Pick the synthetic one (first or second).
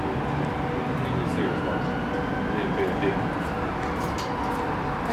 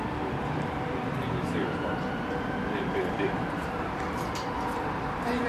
second